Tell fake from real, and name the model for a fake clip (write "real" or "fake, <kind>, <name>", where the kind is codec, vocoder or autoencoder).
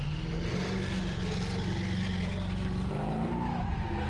real